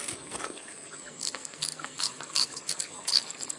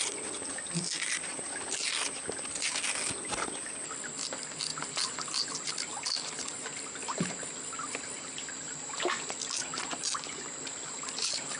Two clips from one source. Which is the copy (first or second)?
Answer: first